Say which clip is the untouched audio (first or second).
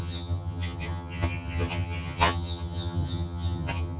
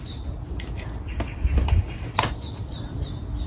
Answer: second